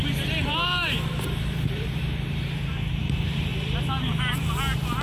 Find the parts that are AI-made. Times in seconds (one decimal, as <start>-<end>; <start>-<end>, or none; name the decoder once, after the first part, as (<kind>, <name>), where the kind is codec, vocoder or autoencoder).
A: 0.0-3.5 (vocoder, BigVGAN v2)